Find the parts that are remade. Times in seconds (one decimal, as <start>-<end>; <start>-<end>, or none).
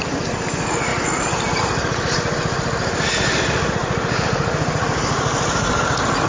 0.9-1.6; 3.8-5.7